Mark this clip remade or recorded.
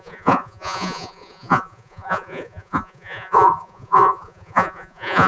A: remade